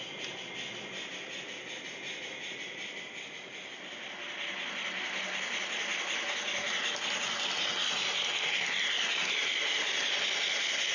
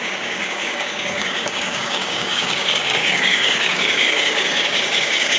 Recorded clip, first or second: first